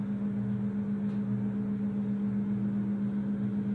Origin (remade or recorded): recorded